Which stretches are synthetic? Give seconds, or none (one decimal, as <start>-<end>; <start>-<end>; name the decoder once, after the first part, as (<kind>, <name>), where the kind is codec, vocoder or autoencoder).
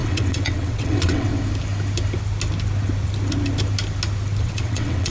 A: 0.0-1.3 (vocoder, WaveNeXt); 4.4-5.1